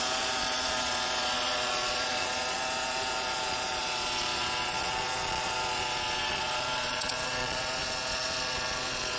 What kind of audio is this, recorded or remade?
remade